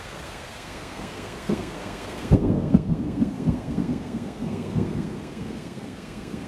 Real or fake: fake